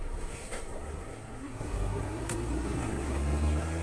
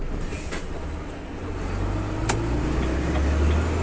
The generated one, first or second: first